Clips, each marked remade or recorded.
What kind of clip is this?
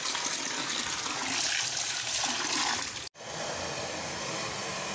recorded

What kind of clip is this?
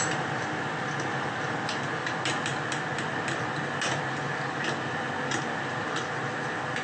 recorded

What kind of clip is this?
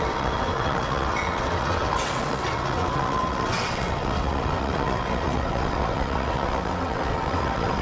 remade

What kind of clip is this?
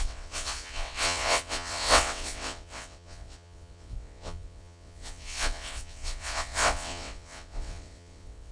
remade